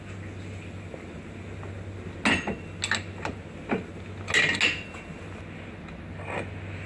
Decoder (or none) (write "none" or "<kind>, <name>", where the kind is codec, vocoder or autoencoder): none